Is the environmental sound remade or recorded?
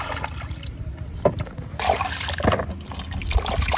recorded